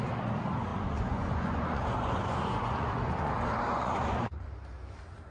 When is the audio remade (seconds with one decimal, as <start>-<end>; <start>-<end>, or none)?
0.7-3.3; 3.7-4.5